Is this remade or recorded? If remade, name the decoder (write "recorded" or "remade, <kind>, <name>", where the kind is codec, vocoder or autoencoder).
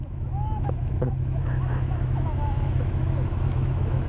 remade, autoencoder, DAC-VAE